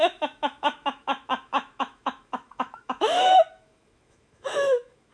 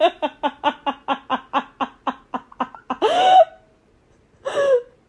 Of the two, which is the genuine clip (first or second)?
second